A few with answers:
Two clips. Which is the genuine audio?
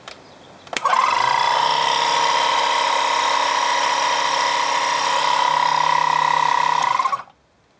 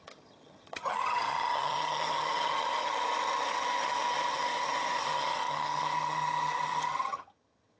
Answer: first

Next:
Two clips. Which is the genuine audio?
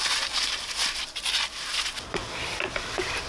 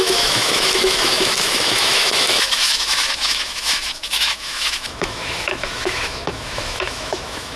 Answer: first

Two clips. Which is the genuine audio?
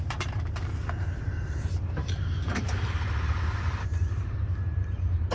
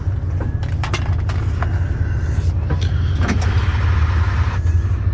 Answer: second